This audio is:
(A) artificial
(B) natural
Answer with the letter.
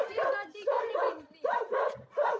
B